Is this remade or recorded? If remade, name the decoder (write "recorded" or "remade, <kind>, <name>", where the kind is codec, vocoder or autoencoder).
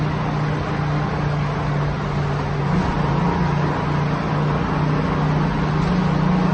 recorded